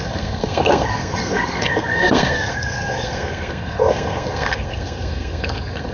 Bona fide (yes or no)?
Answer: no